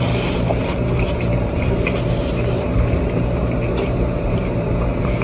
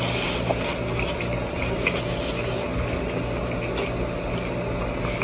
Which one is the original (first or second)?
second